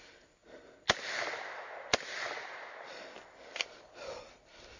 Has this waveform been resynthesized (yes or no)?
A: no